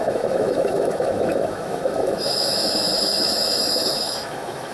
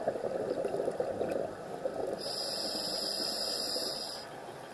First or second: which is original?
second